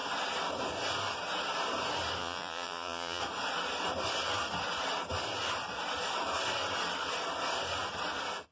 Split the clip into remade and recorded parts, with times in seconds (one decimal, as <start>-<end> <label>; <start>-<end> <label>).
0.0-2.2 recorded; 2.2-3.2 remade; 3.2-8.5 recorded